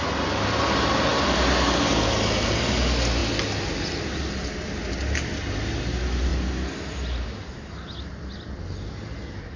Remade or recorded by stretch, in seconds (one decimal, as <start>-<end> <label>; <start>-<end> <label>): 0.0-9.6 recorded